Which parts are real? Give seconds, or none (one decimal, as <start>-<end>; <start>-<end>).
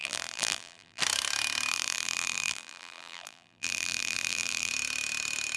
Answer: 1.0-1.7; 4.7-5.6